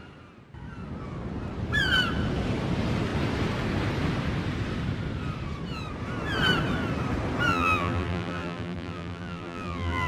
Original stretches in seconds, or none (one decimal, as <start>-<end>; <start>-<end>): 0.0-7.5